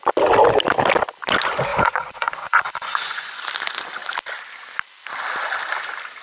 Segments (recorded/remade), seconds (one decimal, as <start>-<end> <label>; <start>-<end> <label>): 0.0-1.7 recorded; 1.7-3.4 remade; 3.4-6.2 recorded